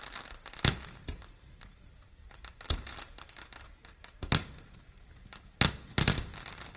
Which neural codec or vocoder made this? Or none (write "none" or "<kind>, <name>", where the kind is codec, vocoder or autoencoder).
none